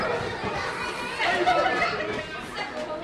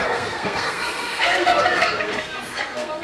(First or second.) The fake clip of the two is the second